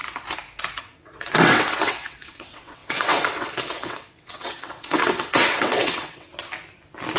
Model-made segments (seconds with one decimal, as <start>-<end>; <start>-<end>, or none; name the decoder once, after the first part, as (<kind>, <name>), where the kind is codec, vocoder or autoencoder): 0.8-6.3 (vocoder, WaveNeXt)